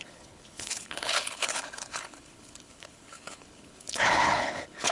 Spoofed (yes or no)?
yes